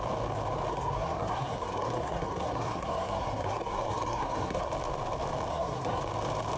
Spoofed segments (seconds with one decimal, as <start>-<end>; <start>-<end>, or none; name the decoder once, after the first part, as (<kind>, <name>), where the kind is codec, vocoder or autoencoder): 0.7-4.7 (codec, SNAC); 5.5-6.0

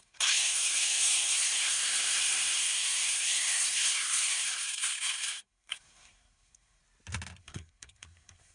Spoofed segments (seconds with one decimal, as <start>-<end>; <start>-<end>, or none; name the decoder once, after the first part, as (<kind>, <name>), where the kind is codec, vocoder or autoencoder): 0.0-6.8 (codec, SNAC); 7.4-8.5

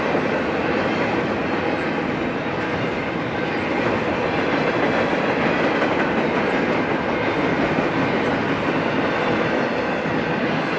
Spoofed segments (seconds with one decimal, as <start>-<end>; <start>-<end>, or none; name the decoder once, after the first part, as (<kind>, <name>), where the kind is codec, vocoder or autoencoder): none